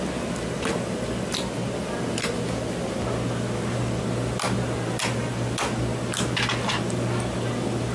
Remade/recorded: recorded